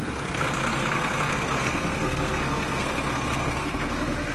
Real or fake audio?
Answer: fake